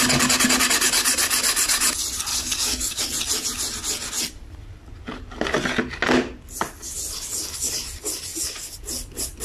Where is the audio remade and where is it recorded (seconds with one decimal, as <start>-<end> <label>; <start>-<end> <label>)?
0.0-2.3 recorded; 2.3-3.0 remade; 3.0-9.4 recorded